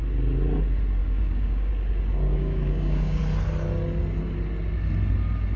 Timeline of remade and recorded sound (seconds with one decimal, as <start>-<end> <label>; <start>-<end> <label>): 0.0-1.0 recorded; 1.0-1.7 remade; 1.7-2.3 recorded; 2.3-3.2 remade; 3.2-5.6 recorded